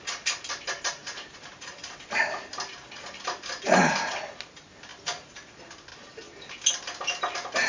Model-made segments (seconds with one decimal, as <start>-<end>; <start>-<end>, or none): 1.0-2.5